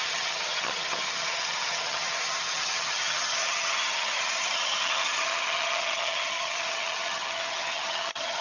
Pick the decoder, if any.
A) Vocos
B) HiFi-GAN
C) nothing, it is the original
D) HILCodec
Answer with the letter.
B